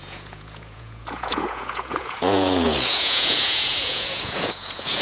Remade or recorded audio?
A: remade